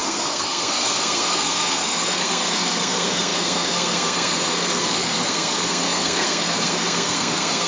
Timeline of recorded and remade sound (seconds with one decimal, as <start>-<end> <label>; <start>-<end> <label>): 0.0-7.7 remade